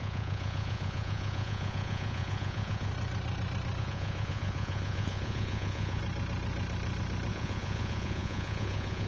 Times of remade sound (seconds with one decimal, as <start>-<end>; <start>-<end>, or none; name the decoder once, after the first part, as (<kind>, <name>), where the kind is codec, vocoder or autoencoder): 0.0-2.9 (vocoder, Vocos); 3.8-6.0; 7.3-9.1